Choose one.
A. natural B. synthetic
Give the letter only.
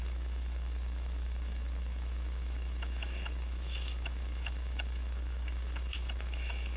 B